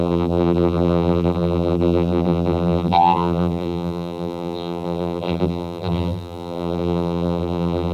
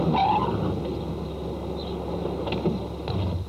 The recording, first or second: second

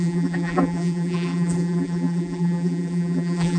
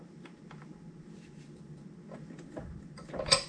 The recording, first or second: second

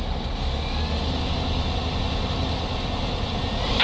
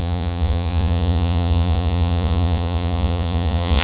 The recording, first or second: first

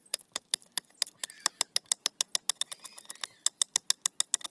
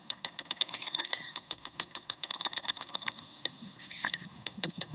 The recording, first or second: first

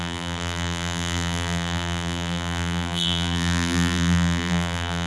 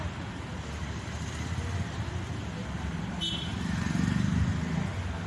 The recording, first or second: second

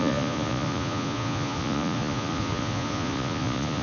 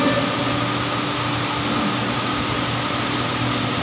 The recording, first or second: second